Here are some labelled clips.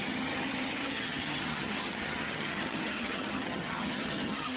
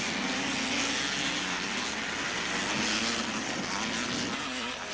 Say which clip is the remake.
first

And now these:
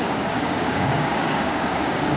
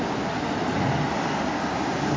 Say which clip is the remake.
first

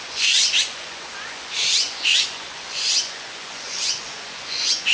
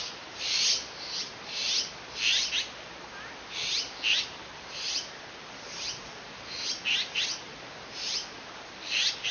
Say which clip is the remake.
first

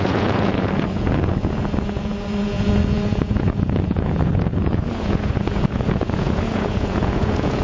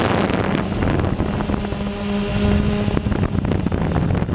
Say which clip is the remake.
first